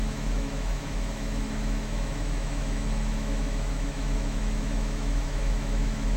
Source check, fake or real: fake